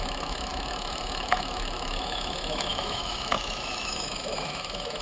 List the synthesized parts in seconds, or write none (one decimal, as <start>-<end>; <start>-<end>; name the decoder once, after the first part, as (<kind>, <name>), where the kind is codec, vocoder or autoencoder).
0.0-5.0 (autoencoder, DAC-VAE)